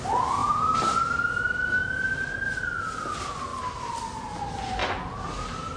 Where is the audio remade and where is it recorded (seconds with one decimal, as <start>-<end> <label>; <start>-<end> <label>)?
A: 0.0-5.8 recorded